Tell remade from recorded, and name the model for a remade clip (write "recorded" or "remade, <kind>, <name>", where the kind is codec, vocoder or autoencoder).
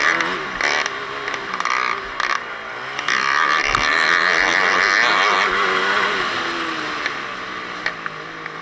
recorded